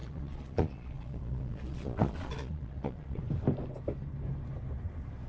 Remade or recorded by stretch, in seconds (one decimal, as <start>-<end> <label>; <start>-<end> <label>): 0.0-3.2 remade; 3.2-5.3 recorded